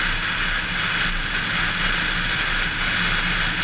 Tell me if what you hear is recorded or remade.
recorded